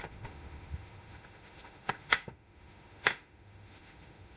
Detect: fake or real fake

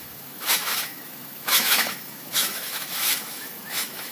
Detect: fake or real fake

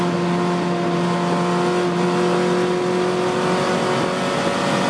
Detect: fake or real real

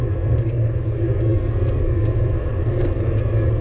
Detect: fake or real fake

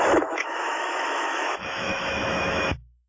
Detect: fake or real fake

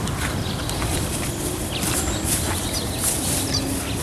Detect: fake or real real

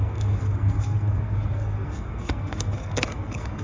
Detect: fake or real fake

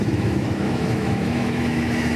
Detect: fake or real fake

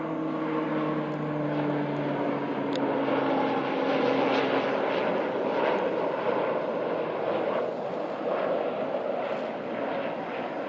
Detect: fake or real real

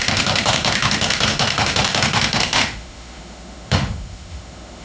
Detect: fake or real fake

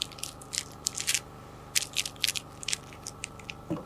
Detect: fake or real real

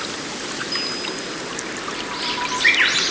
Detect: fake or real real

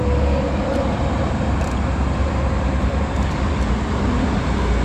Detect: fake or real fake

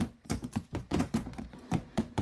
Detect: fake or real fake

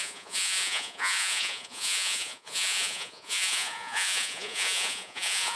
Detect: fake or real fake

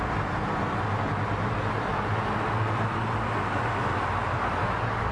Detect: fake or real real